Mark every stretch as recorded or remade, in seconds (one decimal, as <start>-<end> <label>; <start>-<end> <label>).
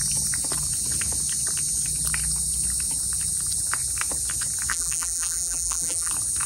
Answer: 0.0-4.7 recorded; 4.7-6.1 remade; 6.1-6.5 recorded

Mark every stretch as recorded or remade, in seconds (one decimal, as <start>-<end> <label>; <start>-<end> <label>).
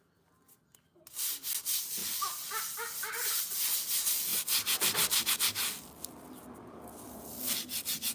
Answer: 0.0-8.1 recorded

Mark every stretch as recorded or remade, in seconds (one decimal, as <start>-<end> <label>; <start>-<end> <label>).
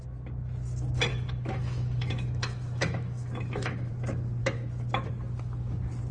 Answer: 0.0-1.1 recorded; 1.1-3.9 remade; 3.9-4.4 recorded; 4.4-5.1 remade; 5.1-6.1 recorded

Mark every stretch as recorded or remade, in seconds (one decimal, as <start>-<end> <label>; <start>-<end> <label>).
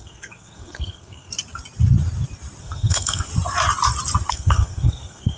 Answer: 0.0-1.3 remade; 1.3-2.6 recorded; 2.6-3.3 remade; 3.3-4.3 recorded; 4.3-5.4 remade